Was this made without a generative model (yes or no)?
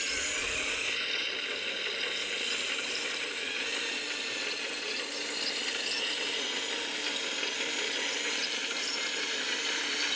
yes